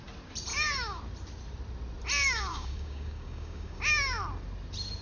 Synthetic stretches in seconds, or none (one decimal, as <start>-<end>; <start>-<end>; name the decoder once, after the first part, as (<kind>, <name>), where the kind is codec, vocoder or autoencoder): 0.5-1.0 (codec, DAC); 2.5-3.8